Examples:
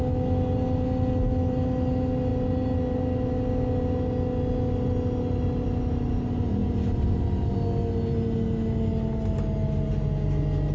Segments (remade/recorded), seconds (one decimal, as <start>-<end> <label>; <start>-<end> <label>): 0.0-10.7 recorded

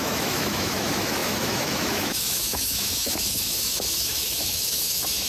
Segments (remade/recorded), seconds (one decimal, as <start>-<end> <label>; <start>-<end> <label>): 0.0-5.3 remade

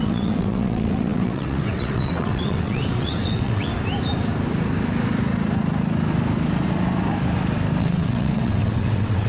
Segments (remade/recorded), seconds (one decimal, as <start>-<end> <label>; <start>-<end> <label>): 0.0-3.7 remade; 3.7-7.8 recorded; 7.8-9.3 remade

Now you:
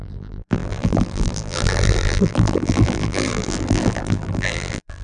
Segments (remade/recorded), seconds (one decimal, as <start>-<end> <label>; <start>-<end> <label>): 0.0-5.0 remade

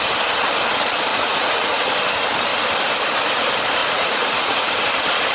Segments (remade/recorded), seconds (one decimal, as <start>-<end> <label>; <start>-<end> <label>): 0.0-1.1 recorded; 1.1-1.9 remade; 1.9-3.8 recorded; 3.8-4.7 remade; 4.7-5.3 recorded

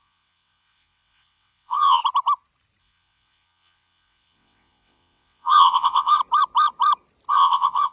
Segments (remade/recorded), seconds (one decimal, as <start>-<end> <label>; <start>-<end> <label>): 0.0-2.0 remade; 2.0-2.8 recorded; 2.8-6.2 remade; 6.2-7.3 recorded; 7.3-7.9 remade